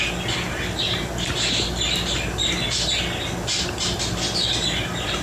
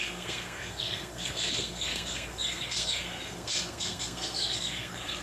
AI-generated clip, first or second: second